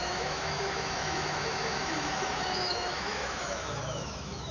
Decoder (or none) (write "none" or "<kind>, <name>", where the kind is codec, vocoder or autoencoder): autoencoder, DAC-VAE